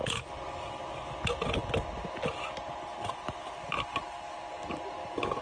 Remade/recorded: recorded